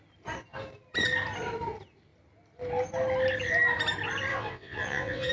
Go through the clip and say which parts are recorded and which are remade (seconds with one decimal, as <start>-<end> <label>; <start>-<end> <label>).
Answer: 0.0-4.3 recorded; 4.3-5.3 remade